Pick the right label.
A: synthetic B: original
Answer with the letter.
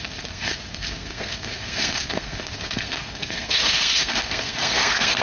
A